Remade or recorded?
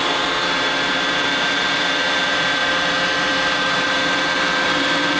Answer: remade